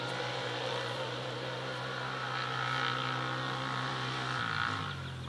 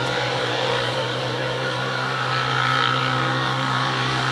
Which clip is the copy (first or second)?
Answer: second